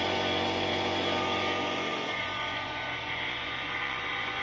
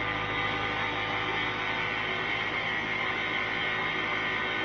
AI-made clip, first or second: first